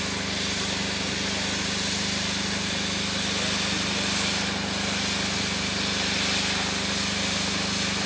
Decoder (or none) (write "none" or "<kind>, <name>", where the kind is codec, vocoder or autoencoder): none